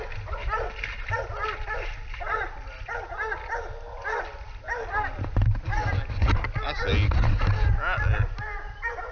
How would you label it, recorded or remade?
recorded